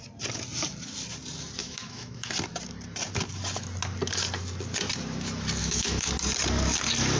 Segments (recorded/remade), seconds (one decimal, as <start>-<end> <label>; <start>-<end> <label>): 0.0-1.6 recorded; 1.6-2.3 remade; 2.3-5.6 recorded; 5.6-6.1 remade; 6.1-7.2 recorded